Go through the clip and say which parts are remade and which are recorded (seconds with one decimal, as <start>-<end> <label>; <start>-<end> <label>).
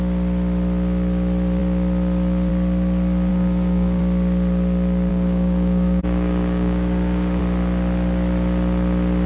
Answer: 0.0-3.3 recorded; 3.3-4.0 remade; 4.0-5.1 recorded; 5.1-7.4 remade; 7.4-9.3 recorded